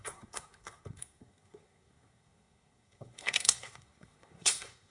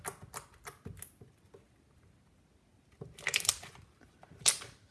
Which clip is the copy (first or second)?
first